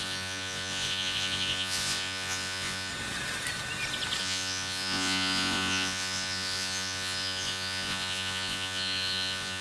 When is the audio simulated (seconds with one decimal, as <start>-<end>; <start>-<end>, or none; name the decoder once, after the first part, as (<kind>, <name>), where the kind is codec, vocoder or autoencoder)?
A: 0.0-2.9 (vocoder, Vocos); 4.2-9.6